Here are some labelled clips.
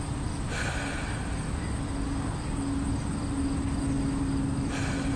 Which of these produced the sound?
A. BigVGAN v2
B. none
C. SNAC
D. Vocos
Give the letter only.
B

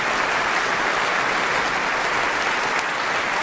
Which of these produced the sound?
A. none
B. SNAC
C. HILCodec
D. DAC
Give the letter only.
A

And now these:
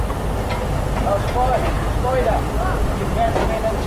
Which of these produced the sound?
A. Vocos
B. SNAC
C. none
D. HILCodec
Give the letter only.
C